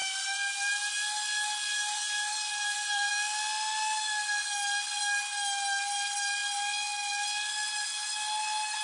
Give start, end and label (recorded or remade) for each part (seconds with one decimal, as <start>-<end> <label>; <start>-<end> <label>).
0.0-0.9 remade; 0.9-1.7 recorded; 1.7-3.1 remade; 3.1-8.8 recorded